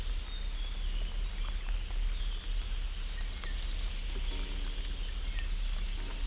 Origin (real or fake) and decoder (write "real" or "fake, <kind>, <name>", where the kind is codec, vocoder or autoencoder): real